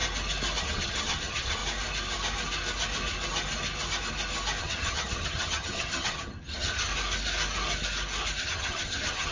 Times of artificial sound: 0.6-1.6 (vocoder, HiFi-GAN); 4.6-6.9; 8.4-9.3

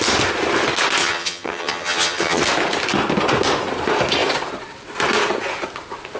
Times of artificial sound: 1.0-2.4 (vocoder, HiFi-GAN)

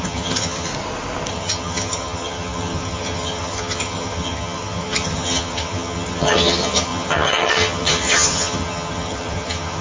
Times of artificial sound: 0.0-0.7 (vocoder, HiFi-GAN); 1.3-9.8

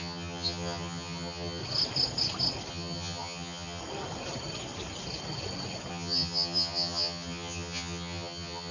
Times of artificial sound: 0.0-1.6 (vocoder, HiFi-GAN); 2.7-3.8; 5.9-8.7

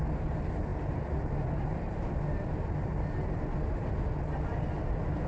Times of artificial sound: none